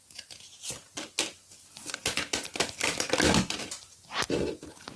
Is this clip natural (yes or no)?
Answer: yes